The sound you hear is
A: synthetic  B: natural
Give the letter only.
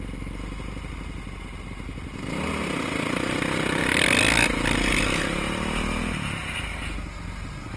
B